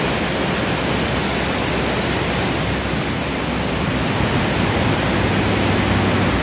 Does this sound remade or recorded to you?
recorded